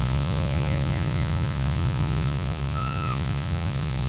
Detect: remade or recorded remade